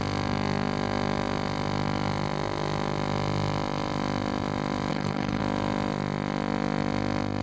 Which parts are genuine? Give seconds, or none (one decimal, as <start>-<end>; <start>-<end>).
0.0-4.9; 5.4-7.4